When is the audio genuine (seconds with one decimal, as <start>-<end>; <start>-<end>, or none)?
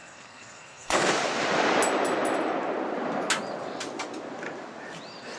1.1-5.4